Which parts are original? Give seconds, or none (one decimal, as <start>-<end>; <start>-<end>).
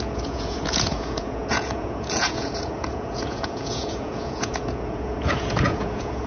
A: none